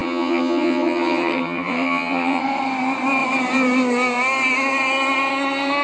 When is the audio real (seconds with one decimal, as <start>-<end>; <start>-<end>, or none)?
2.4-5.8